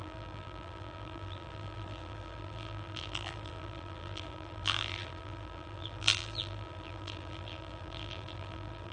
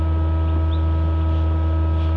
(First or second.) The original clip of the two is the second